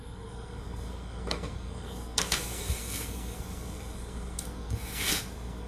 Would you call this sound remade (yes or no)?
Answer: yes